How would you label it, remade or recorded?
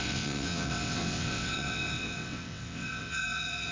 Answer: remade